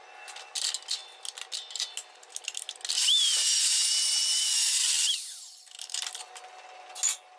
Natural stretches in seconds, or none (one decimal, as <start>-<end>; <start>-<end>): 0.0-7.4